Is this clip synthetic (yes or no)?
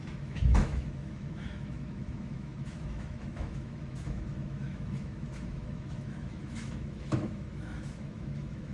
yes